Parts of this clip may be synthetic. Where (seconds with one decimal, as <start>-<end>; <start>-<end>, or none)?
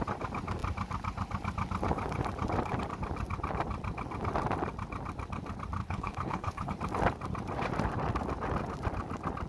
5.8-6.7